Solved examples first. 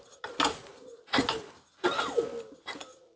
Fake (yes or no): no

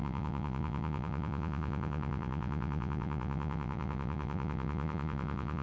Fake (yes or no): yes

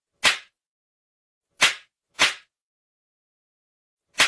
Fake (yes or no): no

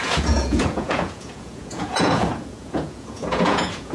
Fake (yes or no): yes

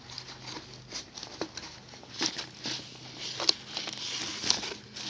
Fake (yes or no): no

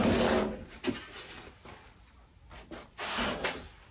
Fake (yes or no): no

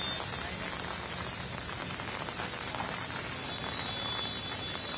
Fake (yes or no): no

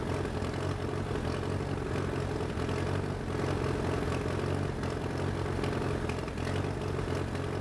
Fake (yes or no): no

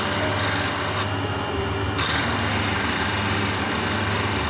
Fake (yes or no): no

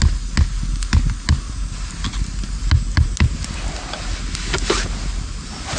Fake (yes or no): no